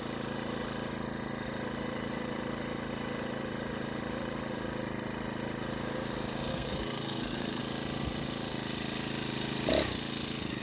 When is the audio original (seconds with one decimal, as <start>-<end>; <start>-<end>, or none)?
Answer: 0.0-6.5; 7.6-10.6